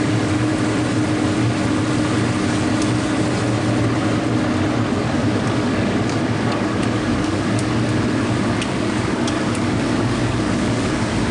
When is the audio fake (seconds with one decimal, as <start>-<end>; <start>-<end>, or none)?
0.0-0.5; 4.9-11.3